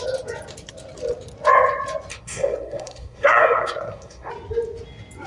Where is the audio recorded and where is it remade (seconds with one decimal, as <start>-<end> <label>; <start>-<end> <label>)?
0.0-2.1 recorded; 2.1-4.3 remade; 4.3-5.3 recorded